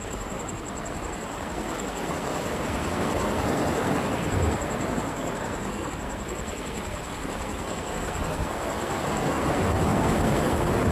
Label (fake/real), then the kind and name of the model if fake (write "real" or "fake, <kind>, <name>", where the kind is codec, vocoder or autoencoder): fake, codec, SNAC